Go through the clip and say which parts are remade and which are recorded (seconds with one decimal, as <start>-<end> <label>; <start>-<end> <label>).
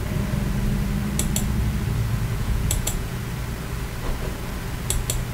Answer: 0.0-2.3 recorded; 2.3-3.2 remade; 3.2-5.3 recorded